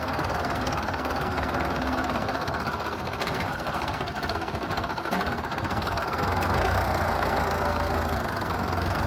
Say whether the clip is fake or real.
fake